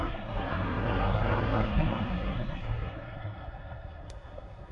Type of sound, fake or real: fake